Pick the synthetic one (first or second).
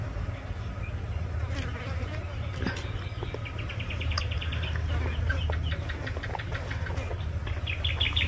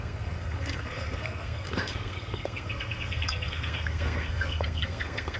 second